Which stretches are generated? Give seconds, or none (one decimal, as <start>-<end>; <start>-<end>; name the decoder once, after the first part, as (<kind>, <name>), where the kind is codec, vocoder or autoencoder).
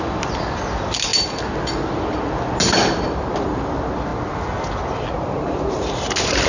none